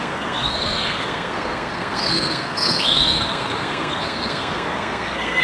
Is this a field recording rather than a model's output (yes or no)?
no